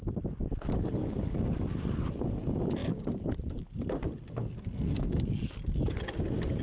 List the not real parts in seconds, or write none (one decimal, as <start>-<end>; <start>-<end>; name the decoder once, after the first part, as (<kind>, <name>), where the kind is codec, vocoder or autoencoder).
1.0-1.6 (codec, DAC)